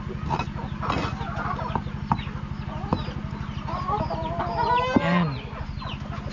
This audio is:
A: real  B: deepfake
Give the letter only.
A